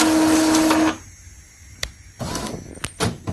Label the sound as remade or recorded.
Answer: recorded